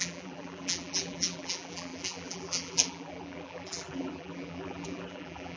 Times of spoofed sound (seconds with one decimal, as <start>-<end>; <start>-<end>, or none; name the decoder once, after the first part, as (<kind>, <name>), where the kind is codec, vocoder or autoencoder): 0.0-5.6 (vocoder, BigVGAN v2)